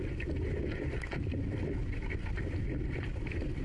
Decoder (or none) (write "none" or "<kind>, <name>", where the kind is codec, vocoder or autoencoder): none